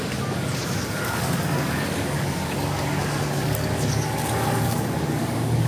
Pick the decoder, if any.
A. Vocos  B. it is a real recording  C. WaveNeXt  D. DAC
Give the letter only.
D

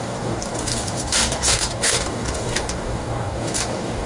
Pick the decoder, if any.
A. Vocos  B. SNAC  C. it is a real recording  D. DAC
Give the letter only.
D